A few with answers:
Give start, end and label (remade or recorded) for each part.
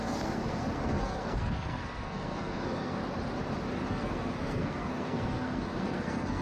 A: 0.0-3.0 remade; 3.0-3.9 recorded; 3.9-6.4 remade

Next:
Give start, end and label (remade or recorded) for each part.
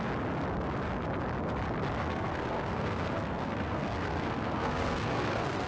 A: 0.0-2.0 recorded; 2.0-5.7 remade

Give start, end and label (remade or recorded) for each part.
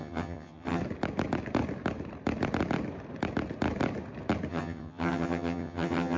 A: 0.0-0.8 remade; 0.8-4.5 recorded; 4.5-6.2 remade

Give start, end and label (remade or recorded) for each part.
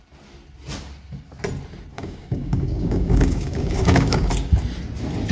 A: 0.0-1.9 recorded; 1.9-4.3 remade; 4.3-5.3 recorded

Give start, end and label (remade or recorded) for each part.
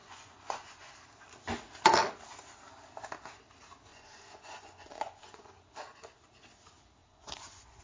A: 0.0-0.9 remade; 0.9-3.9 recorded; 3.9-5.5 remade; 5.5-7.0 recorded; 7.0-7.8 remade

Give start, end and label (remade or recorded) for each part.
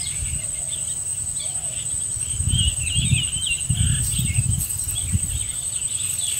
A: 0.0-6.4 recorded